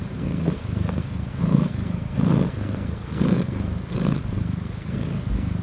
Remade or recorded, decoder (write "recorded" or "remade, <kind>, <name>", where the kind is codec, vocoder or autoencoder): remade, codec, SNAC